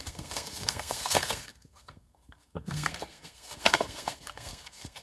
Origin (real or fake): fake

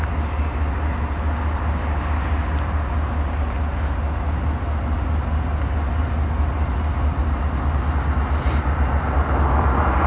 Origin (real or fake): real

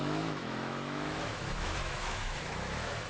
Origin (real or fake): fake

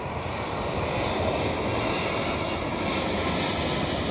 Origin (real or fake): real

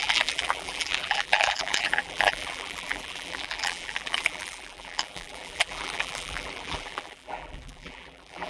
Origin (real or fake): fake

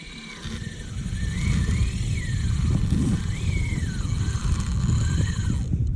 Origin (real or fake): real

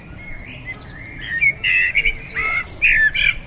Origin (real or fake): real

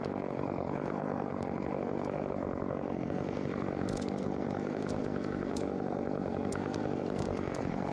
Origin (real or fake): fake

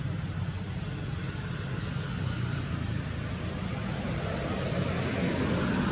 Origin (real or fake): real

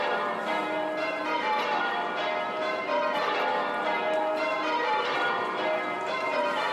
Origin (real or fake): fake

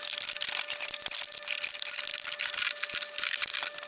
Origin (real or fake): real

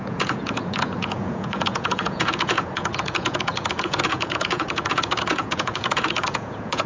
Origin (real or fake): fake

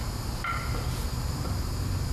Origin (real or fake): real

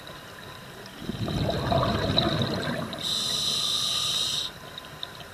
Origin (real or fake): real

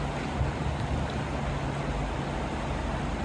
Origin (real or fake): real